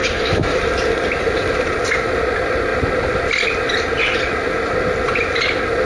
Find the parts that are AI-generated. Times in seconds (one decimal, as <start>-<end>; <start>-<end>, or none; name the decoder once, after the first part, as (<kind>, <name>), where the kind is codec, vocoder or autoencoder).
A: 0.0-0.6 (autoencoder, DAC-VAE)